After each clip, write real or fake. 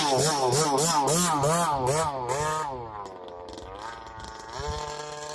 real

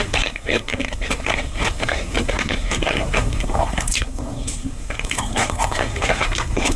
fake